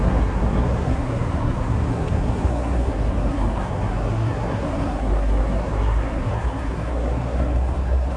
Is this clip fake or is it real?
fake